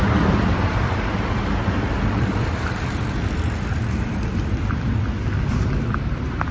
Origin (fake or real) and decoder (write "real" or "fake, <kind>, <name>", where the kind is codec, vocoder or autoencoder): fake, vocoder, BigVGAN v2